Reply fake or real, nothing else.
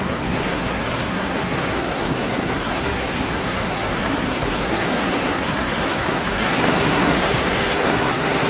fake